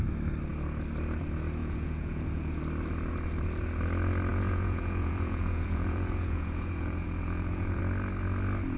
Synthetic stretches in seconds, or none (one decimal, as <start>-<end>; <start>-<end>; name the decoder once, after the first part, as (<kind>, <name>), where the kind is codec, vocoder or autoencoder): 1.6-2.6 (vocoder, Vocos); 4.3-7.8